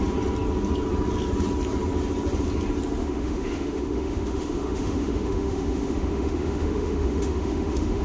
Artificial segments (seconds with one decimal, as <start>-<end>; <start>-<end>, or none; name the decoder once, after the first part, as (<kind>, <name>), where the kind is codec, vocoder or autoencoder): 3.0-8.0 (autoencoder, DAC-VAE)